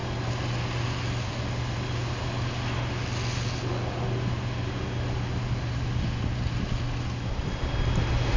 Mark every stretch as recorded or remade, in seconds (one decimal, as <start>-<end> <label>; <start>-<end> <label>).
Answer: 0.0-8.4 recorded